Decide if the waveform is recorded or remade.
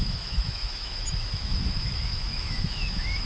remade